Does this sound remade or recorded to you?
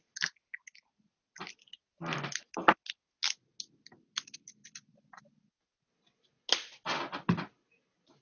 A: recorded